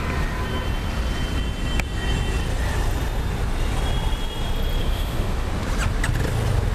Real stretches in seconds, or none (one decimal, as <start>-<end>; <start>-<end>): 0.0-4.8; 5.5-6.7

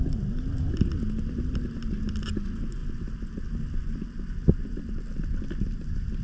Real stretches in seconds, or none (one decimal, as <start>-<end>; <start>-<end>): 0.0-6.2